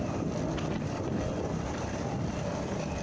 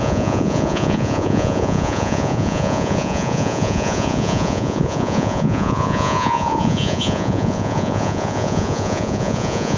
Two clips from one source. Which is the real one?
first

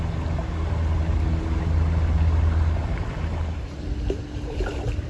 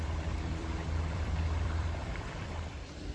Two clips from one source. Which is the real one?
first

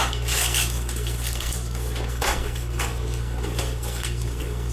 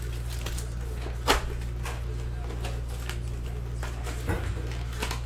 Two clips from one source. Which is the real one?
second